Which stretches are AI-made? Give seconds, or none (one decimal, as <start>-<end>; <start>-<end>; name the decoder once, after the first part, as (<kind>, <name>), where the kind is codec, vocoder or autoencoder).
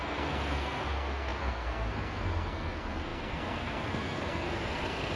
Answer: 0.0-5.2 (codec, SNAC)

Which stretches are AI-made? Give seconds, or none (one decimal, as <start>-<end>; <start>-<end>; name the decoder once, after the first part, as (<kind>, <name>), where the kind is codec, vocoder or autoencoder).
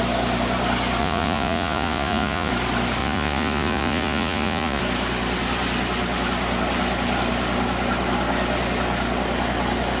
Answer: 1.0-2.5 (vocoder, Vocos); 3.0-4.8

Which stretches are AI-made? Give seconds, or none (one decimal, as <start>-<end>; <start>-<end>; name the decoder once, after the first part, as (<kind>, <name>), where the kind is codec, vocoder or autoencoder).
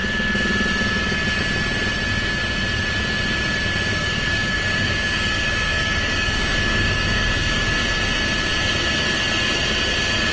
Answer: 3.9-7.9 (codec, DAC)